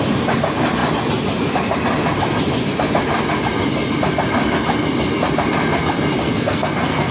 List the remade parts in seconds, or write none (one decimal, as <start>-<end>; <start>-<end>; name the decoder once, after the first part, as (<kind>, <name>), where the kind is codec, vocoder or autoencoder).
6.2-7.1 (codec, SNAC)